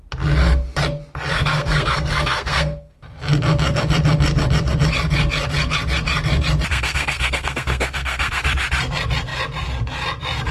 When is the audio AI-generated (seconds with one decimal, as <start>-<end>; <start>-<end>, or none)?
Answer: 1.3-3.0; 6.7-8.4